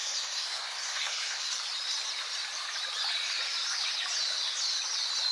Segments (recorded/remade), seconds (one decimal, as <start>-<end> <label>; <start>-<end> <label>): 0.0-1.5 remade; 1.5-5.3 recorded